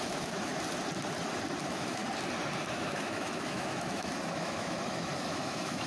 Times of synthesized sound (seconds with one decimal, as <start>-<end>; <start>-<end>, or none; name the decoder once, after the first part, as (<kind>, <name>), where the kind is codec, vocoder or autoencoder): 0.0-0.5 (autoencoder, DAC-VAE); 1.6-2.0; 2.7-5.9